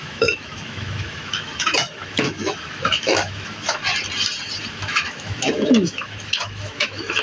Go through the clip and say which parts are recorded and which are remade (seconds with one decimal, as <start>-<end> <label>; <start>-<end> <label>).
0.0-3.8 remade; 3.8-4.7 recorded; 4.7-7.2 remade